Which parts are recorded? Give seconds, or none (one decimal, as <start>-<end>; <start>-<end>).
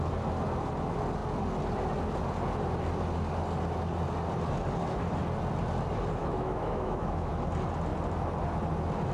0.0-6.2; 7.3-9.1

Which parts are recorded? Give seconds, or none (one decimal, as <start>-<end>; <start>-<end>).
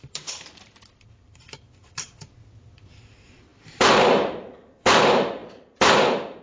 none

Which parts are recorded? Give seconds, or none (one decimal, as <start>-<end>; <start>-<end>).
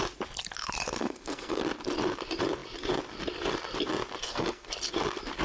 0.0-1.0; 1.6-4.2; 4.7-5.4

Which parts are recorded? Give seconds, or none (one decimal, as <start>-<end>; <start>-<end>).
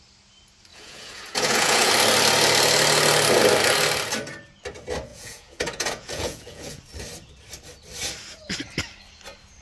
0.0-0.7; 1.9-5.1; 6.8-9.6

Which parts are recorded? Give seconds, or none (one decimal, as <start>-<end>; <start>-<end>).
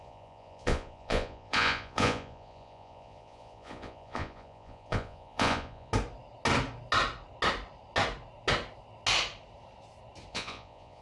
5.9-10.3